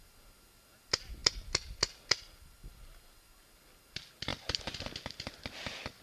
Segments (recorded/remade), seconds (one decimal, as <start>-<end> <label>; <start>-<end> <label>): 0.0-6.0 recorded